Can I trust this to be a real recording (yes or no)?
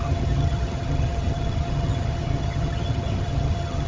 no